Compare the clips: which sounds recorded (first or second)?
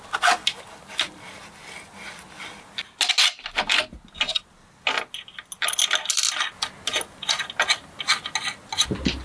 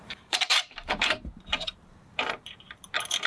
first